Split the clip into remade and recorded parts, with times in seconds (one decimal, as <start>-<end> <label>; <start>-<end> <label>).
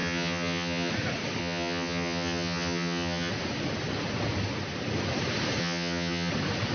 0.0-0.9 remade; 0.9-1.4 recorded; 1.4-3.3 remade; 3.3-5.6 recorded; 5.6-6.3 remade; 6.3-6.7 recorded